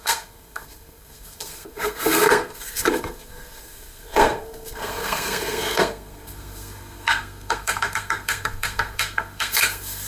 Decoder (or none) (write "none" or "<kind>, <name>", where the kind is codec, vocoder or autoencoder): codec, SNAC